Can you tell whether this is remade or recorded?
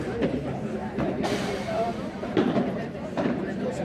remade